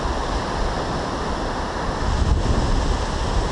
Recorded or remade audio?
recorded